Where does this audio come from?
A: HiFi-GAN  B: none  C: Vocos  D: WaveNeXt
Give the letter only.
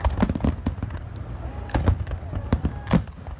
B